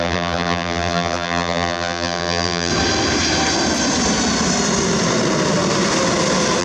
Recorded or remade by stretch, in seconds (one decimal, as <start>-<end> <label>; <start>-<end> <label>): 0.0-2.7 remade; 2.7-6.6 recorded